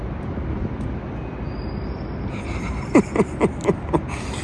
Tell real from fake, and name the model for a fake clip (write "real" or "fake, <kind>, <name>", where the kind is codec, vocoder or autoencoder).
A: real